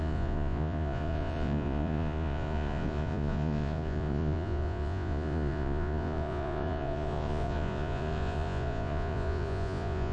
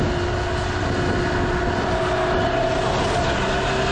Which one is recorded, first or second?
second